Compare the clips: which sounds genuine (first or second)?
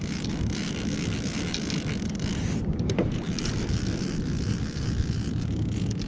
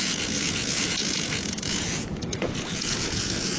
first